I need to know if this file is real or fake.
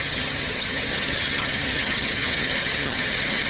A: fake